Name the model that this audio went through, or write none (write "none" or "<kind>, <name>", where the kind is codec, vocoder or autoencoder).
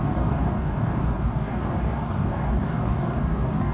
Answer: codec, DAC